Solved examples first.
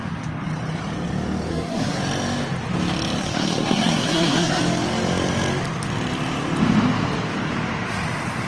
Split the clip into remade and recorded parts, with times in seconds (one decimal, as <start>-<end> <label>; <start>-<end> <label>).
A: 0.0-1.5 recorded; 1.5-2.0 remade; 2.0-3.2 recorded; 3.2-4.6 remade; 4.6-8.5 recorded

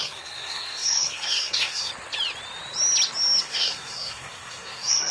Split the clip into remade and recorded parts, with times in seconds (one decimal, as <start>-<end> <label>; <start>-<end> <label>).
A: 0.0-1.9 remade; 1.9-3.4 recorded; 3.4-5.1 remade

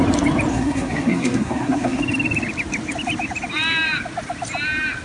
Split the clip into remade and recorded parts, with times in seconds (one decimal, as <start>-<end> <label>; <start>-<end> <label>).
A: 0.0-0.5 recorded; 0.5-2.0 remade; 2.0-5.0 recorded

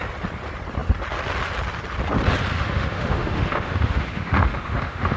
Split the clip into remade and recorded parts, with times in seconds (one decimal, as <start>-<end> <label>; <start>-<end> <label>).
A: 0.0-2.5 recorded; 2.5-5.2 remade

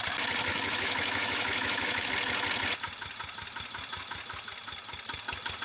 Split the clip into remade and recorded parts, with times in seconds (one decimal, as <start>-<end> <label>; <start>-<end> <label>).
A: 0.0-0.5 recorded; 0.5-2.1 remade; 2.1-5.6 recorded